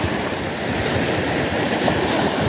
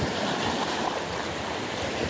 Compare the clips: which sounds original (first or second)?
second